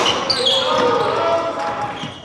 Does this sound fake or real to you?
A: real